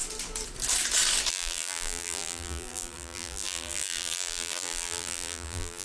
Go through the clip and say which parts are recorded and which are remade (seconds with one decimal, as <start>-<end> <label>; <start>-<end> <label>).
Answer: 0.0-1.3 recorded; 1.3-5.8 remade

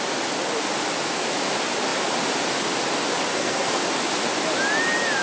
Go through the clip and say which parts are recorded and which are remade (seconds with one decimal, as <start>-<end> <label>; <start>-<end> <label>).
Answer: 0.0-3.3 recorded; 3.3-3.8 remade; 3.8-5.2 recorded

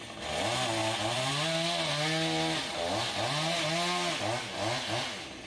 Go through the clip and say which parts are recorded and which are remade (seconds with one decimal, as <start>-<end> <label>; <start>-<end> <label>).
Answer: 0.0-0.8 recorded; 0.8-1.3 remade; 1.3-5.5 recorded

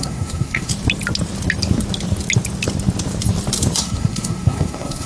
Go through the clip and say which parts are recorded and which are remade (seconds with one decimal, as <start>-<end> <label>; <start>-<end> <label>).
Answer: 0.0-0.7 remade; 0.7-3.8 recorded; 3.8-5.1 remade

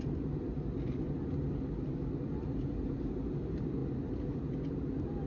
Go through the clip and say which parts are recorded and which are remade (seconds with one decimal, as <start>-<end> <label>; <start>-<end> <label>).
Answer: 0.0-5.3 recorded

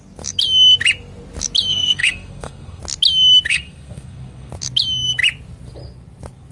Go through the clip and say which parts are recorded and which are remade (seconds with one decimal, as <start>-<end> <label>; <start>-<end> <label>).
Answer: 0.0-1.7 recorded; 1.7-2.8 remade; 2.8-3.5 recorded; 3.5-4.5 remade; 4.5-6.5 recorded

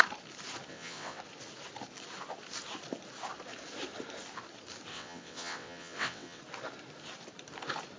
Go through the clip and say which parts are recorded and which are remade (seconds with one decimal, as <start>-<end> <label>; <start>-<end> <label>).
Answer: 0.0-0.7 recorded; 0.7-1.2 remade; 1.2-4.9 recorded; 4.9-6.4 remade; 6.4-8.0 recorded

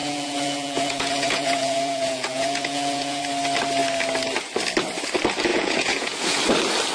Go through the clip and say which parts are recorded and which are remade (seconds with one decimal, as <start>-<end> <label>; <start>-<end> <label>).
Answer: 0.0-3.2 remade; 3.2-5.5 recorded; 5.5-6.4 remade; 6.4-6.9 recorded